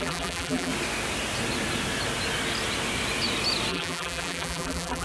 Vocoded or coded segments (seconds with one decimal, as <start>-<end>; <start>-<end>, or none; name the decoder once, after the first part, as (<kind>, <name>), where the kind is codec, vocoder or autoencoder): 0.0-0.7 (vocoder, BigVGAN v2); 3.7-5.0